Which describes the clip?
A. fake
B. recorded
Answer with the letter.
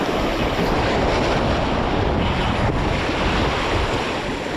B